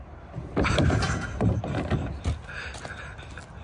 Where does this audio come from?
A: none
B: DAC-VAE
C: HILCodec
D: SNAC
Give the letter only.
A